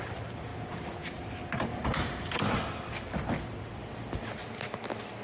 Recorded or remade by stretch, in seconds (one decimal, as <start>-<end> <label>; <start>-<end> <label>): 0.0-1.7 recorded; 1.7-2.4 remade; 2.4-5.2 recorded